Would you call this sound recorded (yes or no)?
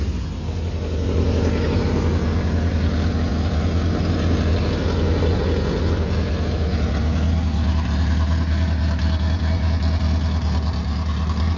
yes